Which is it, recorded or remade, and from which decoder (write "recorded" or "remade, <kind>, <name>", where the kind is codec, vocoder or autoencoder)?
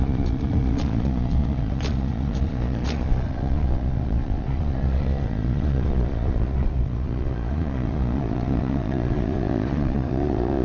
remade, vocoder, Vocos